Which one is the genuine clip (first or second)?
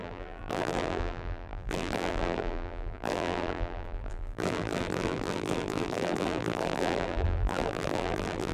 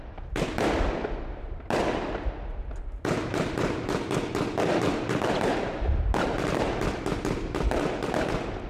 second